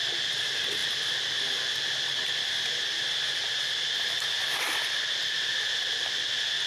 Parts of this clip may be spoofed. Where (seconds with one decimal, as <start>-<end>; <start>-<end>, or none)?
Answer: none